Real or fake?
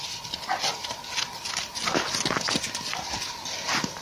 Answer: real